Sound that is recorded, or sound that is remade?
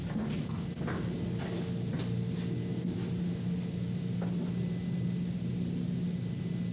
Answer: recorded